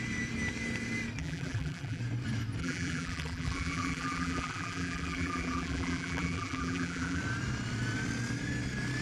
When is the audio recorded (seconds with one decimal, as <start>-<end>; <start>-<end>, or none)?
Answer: 0.0-1.2; 2.0-2.6; 7.2-9.0